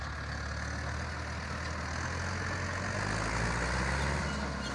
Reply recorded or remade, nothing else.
recorded